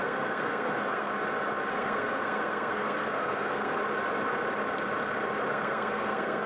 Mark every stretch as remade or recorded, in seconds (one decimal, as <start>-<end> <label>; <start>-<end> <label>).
0.0-1.1 remade; 1.1-1.7 recorded; 1.7-3.8 remade; 3.8-5.5 recorded; 5.5-6.5 remade